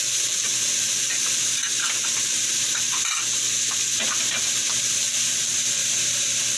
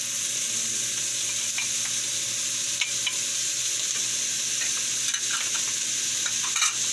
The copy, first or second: first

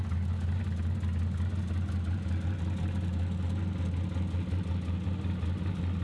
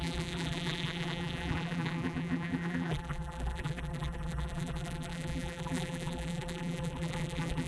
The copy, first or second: second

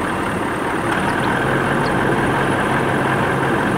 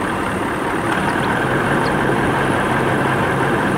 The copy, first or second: second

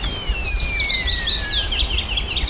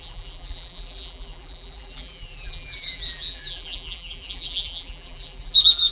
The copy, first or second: second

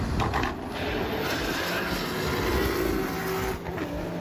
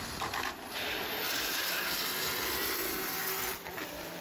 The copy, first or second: second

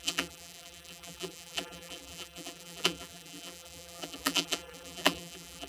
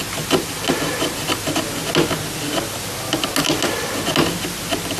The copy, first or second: first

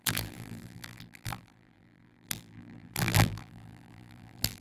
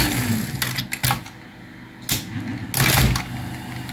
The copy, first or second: first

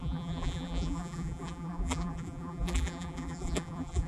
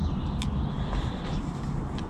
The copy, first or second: first